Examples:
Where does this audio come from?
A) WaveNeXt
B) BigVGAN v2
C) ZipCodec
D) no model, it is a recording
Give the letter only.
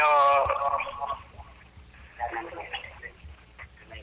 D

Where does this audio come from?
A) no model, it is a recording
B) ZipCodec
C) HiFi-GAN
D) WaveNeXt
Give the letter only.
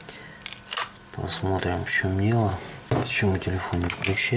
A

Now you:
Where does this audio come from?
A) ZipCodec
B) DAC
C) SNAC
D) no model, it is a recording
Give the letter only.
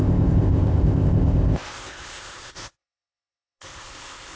A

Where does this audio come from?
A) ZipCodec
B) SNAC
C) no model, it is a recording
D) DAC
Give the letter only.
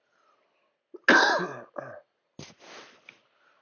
C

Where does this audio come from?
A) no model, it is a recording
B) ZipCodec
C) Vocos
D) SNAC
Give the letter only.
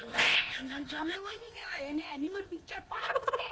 B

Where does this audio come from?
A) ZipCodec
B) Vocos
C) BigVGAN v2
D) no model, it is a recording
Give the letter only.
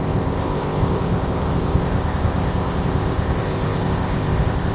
A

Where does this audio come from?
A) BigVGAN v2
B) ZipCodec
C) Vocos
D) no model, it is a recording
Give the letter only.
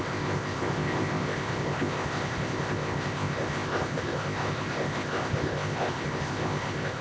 B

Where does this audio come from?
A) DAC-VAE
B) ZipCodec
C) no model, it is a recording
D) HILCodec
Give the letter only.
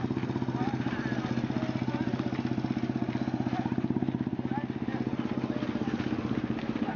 C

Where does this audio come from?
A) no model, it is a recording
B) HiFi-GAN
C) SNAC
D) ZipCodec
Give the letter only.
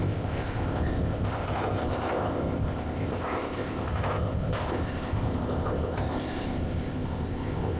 D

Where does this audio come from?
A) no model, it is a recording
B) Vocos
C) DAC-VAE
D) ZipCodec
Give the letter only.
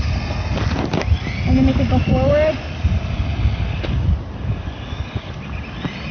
A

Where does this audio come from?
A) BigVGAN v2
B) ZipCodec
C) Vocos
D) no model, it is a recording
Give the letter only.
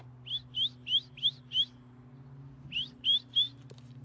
D